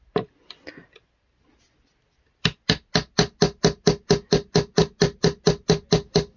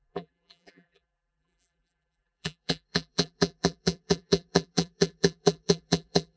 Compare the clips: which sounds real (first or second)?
first